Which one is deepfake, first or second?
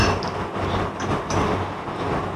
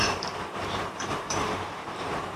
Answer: second